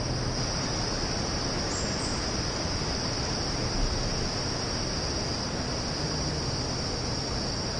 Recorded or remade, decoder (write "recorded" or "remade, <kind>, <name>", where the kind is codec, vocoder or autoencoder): recorded